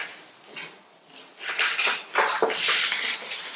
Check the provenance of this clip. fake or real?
real